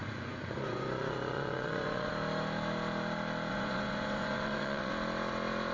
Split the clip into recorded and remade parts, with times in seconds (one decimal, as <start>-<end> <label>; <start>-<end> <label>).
0.0-2.1 remade; 2.1-3.5 recorded; 3.5-4.9 remade; 4.9-5.7 recorded